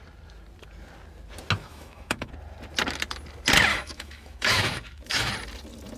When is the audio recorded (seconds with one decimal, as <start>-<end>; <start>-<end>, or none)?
0.0-1.6; 2.3-3.7; 5.3-6.0